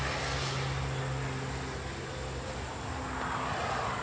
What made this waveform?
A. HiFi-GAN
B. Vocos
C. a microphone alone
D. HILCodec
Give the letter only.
C